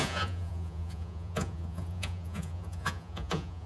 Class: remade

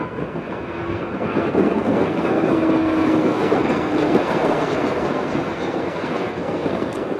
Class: remade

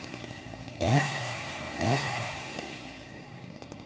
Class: remade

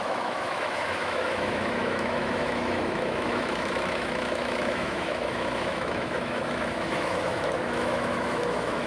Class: remade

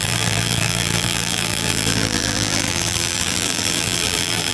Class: remade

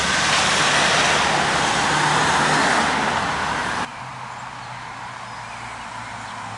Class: recorded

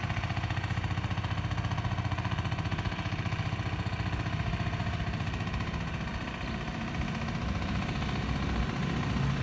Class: recorded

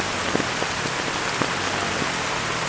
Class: recorded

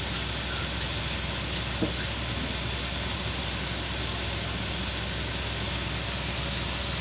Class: recorded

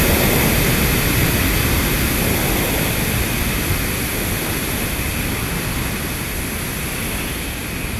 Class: recorded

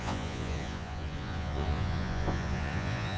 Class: remade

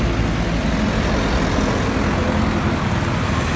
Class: recorded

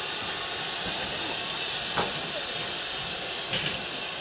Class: recorded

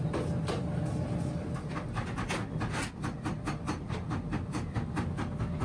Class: recorded